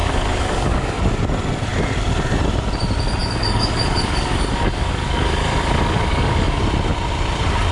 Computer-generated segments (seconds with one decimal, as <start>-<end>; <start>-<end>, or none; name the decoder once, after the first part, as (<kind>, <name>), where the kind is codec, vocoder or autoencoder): 0.0-1.0 (codec, DAC); 3.2-6.6